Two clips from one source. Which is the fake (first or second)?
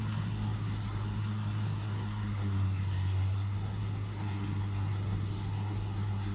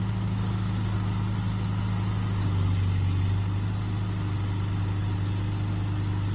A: first